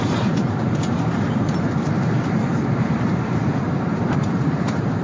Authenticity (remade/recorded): remade